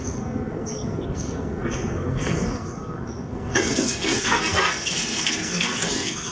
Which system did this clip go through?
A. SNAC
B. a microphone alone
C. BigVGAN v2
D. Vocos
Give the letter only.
A